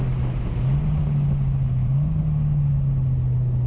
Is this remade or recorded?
recorded